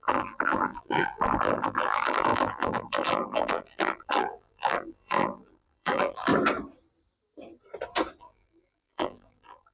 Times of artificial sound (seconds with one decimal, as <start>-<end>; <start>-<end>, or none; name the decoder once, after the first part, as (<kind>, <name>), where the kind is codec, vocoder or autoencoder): 0.0-6.3 (vocoder, BigVGAN v2); 8.2-9.7